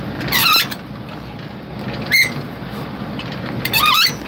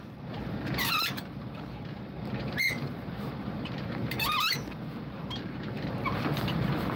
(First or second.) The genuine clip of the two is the first